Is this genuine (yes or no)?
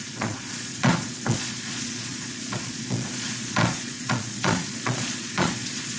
no